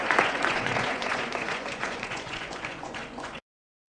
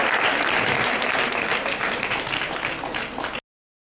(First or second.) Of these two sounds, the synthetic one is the first